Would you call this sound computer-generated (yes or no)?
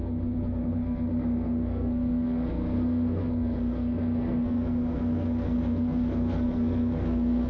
yes